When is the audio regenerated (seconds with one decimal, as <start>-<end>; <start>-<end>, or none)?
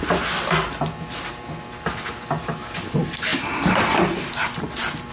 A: none